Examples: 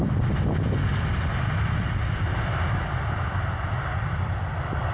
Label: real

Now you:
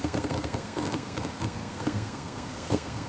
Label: fake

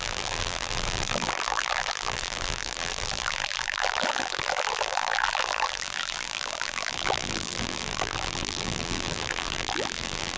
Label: fake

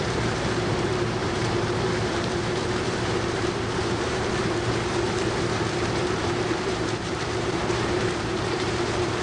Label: fake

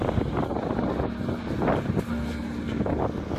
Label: real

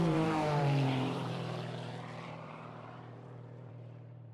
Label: fake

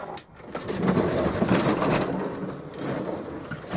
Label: real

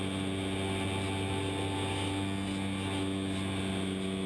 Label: real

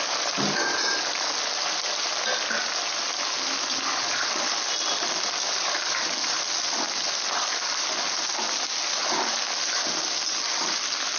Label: real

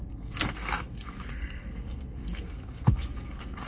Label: fake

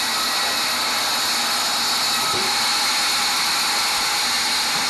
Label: real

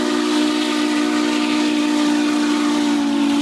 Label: real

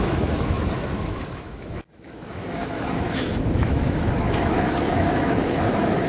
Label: fake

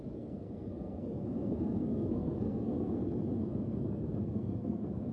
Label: fake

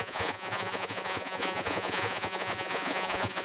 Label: fake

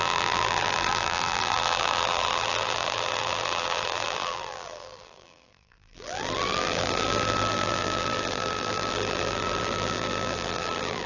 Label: fake